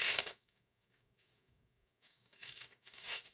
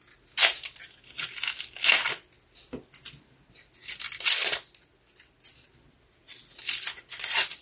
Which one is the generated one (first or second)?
first